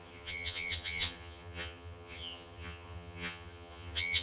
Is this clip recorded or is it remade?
remade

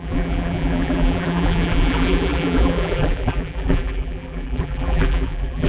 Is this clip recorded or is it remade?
remade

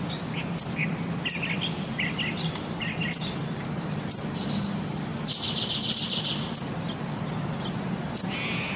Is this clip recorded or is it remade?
recorded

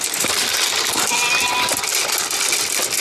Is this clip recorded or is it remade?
recorded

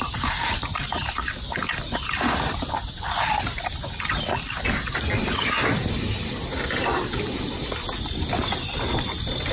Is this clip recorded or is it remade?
recorded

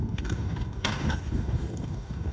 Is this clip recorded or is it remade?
remade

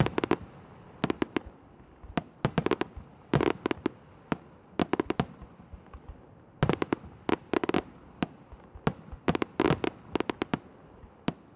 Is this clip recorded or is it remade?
recorded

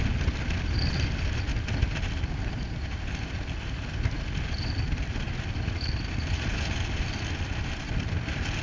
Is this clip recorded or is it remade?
recorded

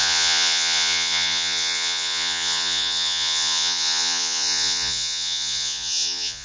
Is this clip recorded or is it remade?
remade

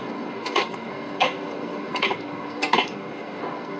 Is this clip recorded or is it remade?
remade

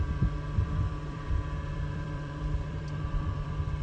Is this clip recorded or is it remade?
remade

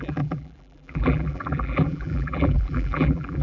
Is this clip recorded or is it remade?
remade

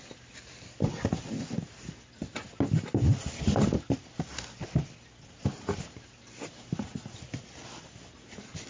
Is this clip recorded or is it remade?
recorded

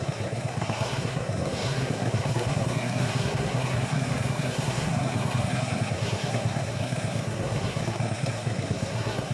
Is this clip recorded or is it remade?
remade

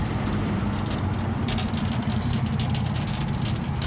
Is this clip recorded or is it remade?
remade